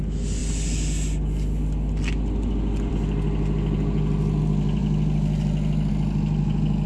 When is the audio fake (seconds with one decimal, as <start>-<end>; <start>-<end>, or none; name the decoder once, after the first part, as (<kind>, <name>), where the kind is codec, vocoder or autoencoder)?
none